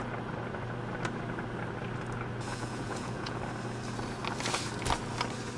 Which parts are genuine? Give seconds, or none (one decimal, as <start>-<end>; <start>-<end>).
0.0-2.5; 3.4-5.6